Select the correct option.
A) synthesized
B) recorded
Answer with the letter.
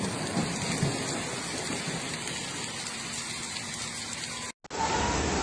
B